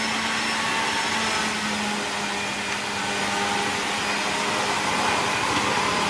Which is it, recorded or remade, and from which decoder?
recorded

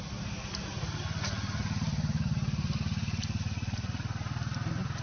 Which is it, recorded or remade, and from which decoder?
recorded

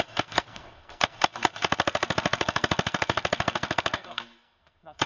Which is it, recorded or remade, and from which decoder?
remade, codec, SNAC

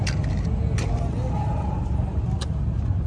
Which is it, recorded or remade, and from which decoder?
recorded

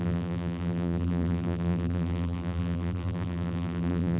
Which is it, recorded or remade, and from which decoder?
remade, vocoder, BigVGAN v2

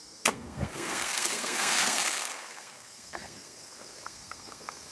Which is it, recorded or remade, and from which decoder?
remade, codec, SNAC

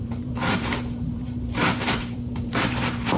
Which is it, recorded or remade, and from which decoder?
remade, vocoder, BigVGAN v2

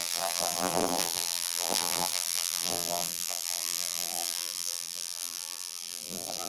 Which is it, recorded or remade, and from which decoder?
remade, vocoder, BigVGAN v2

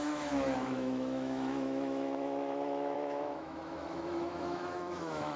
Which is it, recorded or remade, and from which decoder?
remade, autoencoder, DAC-VAE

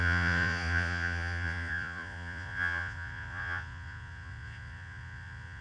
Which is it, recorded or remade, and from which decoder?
remade, vocoder, Vocos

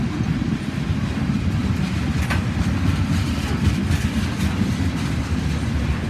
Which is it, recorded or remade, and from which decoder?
recorded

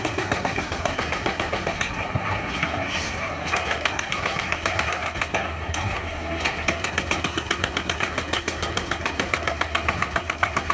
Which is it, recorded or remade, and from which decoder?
remade, codec, SNAC